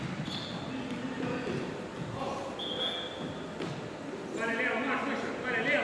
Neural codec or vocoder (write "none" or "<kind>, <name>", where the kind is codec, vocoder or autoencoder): none